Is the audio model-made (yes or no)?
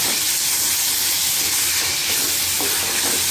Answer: no